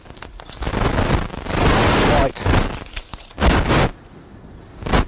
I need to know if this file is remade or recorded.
recorded